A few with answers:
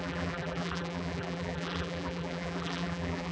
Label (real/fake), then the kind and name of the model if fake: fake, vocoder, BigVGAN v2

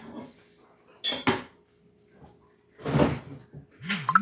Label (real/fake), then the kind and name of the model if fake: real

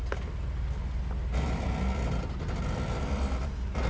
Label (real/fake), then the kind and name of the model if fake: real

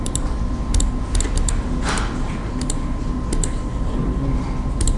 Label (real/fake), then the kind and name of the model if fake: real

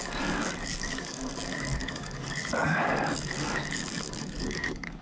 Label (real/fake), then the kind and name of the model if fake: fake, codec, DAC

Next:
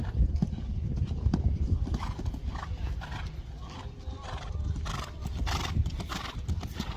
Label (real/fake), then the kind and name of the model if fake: real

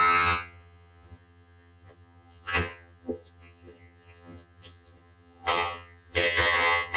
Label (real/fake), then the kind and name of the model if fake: fake, vocoder, HiFi-GAN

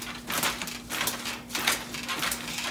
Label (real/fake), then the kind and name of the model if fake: real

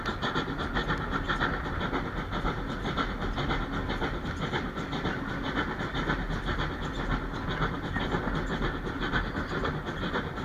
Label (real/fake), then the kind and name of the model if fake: real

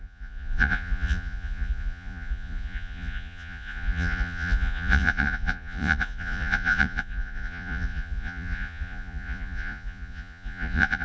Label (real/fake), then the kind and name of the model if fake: fake, vocoder, Vocos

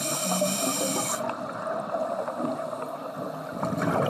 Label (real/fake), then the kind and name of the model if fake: real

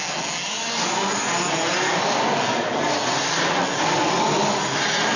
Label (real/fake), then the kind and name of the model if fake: real